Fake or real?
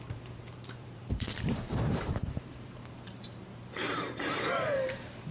fake